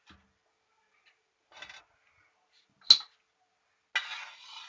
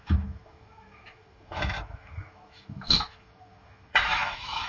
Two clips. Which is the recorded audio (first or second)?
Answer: first